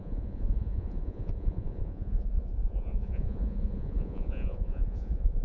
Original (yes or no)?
no